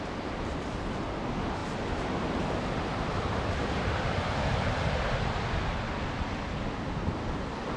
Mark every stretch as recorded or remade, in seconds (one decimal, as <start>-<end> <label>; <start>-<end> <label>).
0.0-7.8 recorded